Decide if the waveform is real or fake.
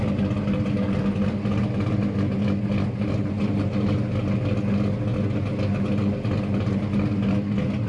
real